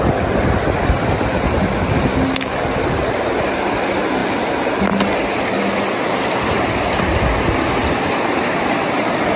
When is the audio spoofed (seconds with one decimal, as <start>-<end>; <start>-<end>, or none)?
none